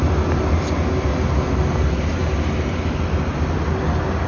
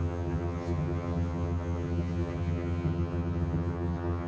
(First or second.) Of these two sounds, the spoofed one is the second